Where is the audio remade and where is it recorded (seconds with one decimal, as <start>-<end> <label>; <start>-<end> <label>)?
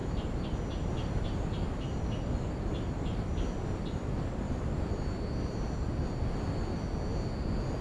0.0-7.8 recorded